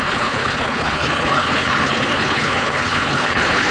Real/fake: fake